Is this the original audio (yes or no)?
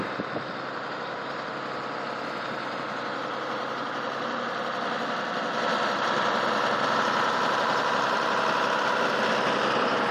yes